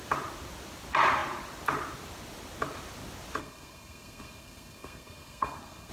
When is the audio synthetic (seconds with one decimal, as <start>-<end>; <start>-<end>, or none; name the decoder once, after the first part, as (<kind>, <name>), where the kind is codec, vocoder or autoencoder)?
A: 3.4-5.9 (codec, SNAC)